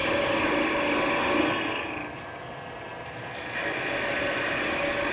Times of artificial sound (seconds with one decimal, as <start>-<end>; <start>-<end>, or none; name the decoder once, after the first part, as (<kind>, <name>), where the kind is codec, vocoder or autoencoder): none

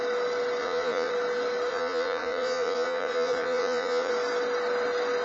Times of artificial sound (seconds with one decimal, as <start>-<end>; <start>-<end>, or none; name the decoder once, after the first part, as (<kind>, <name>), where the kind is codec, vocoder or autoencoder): 0.6-1.1 (vocoder, Vocos); 1.7-4.1

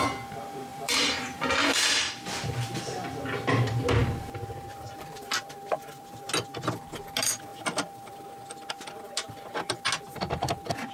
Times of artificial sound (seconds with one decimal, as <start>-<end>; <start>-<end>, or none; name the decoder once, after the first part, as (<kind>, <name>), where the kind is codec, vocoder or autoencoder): 0.7-2.8 (vocoder, BigVGAN v2); 4.0-6.2

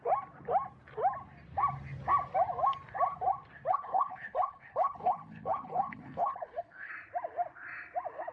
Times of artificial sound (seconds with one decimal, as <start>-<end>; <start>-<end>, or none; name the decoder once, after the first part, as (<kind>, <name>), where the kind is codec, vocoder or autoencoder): 3.7-6.9 (codec, HILCodec)

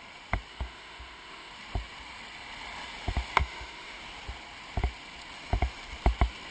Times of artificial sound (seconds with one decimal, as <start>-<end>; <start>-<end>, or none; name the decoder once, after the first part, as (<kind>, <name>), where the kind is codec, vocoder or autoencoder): 0.5-1.5 (autoencoder, DAC-VAE); 3.4-4.0

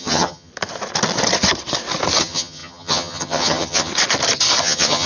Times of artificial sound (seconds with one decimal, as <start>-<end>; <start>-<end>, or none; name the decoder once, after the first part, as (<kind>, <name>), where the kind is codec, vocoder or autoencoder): 0.0-0.5 (vocoder, HiFi-GAN); 2.2-3.9; 4.6-5.1

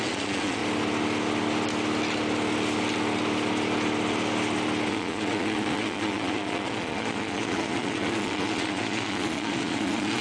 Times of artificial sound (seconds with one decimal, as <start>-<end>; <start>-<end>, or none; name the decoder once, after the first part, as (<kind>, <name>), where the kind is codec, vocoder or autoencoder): 0.0-0.6 (vocoder, Vocos); 4.9-10.2

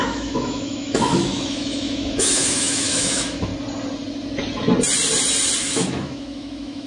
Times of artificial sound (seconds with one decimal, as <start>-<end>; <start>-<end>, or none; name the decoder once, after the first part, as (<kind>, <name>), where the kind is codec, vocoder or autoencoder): 0.0-3.5 (autoencoder, DAC-VAE); 5.6-6.9